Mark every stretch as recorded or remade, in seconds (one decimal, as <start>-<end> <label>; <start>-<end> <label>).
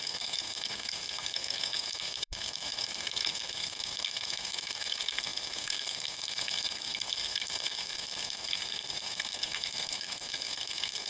0.0-11.1 remade